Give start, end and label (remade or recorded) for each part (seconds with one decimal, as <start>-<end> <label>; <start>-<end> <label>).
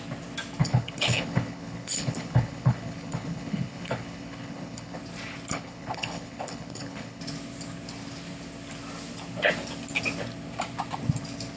0.0-0.6 recorded; 0.6-5.0 remade; 5.0-5.5 recorded; 5.5-7.2 remade; 7.2-11.6 recorded